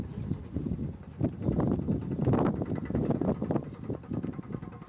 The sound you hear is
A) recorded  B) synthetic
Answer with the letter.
A